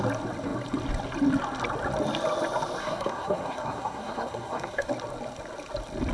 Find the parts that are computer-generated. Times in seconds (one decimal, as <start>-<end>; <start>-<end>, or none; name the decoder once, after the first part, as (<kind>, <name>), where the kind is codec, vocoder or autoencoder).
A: 2.8-4.9 (codec, SNAC)